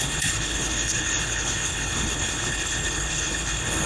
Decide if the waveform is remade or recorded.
remade